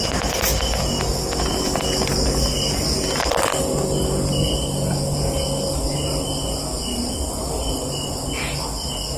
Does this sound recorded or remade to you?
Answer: recorded